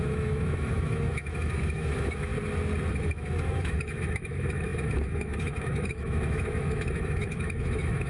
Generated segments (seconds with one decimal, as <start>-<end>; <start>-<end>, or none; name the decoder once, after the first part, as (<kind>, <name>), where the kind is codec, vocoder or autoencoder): 0.0-2.3 (autoencoder, DAC-VAE); 2.9-8.1